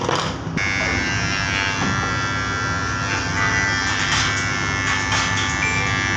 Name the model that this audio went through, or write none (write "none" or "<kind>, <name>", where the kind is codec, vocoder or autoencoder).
none